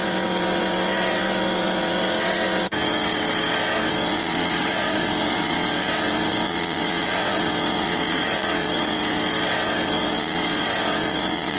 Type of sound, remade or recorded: remade